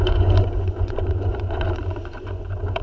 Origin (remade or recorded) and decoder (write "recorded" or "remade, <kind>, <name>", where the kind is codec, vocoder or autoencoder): remade, vocoder, Vocos